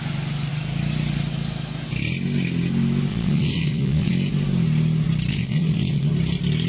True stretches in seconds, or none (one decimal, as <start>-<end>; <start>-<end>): 0.0-3.1; 4.1-5.3; 6.1-6.7